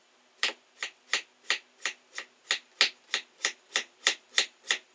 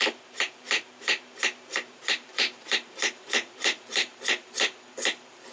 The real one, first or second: first